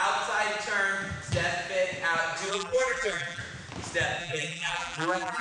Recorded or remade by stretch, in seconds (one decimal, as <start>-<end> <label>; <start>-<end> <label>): 0.0-2.5 recorded; 2.5-3.4 remade; 3.4-4.2 recorded; 4.2-5.4 remade